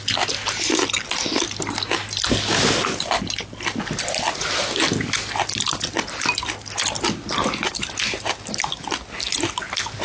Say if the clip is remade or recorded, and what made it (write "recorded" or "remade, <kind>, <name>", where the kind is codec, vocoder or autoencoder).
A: recorded